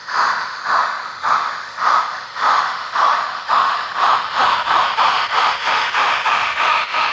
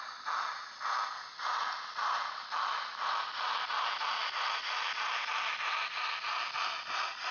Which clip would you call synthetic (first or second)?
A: first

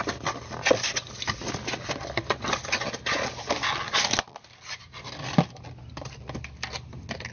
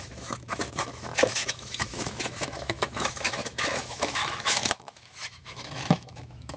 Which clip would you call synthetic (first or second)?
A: second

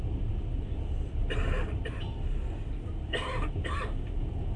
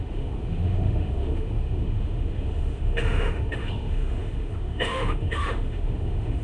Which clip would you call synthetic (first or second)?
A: second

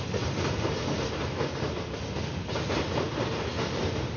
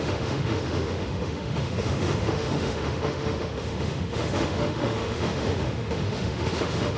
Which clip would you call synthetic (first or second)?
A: second